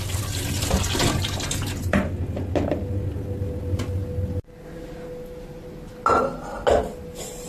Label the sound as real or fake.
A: real